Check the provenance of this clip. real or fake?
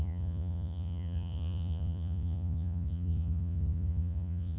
fake